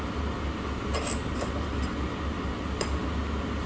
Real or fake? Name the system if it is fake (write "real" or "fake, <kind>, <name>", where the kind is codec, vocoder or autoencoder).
real